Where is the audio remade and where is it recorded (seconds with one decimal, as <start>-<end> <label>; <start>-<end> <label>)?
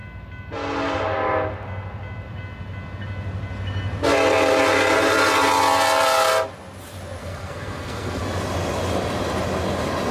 0.0-7.2 recorded; 7.2-8.2 remade; 8.2-10.1 recorded